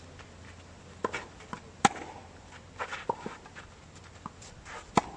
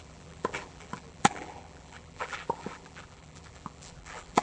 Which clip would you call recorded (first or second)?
first